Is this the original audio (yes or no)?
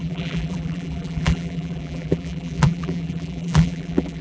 no